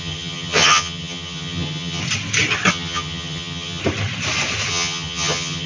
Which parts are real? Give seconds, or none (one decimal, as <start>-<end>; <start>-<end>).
2.0-2.7; 3.8-4.7